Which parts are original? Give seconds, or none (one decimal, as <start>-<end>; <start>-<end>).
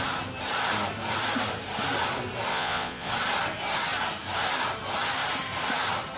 0.0-2.5; 3.1-6.2